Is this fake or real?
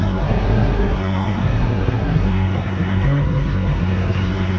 fake